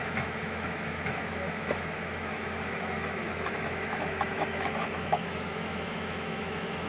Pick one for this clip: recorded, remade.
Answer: remade